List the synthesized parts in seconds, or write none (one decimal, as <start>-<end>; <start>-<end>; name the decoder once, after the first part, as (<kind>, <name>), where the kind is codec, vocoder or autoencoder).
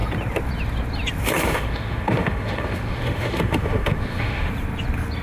1.4-4.5 (autoencoder, DAC-VAE)